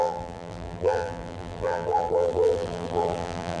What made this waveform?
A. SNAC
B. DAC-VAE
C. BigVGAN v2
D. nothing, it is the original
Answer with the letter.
C